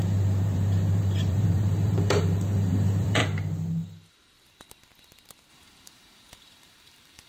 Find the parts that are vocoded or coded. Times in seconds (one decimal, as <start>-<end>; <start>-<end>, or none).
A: 0.0-3.2; 5.5-7.3